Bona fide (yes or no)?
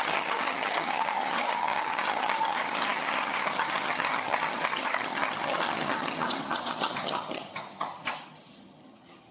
no